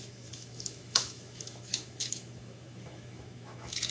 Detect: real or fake fake